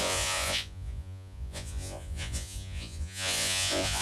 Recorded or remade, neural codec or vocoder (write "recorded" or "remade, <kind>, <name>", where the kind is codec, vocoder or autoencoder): remade, vocoder, Vocos